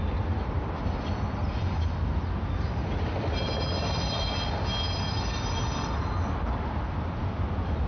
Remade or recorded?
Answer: recorded